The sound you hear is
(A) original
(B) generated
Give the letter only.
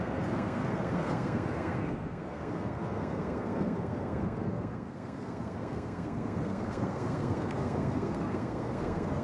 B